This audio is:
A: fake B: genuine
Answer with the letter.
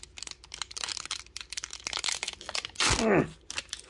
B